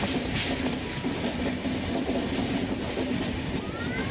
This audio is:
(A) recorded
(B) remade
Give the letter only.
A